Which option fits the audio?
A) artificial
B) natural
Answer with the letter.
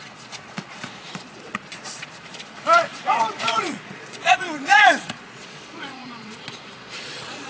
A